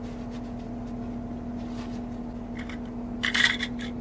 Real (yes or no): yes